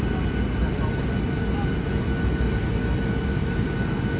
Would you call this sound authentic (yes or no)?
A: yes